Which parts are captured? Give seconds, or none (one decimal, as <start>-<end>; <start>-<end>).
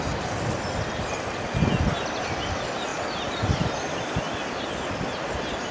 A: 0.0-5.7